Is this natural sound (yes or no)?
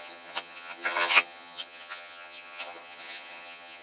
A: no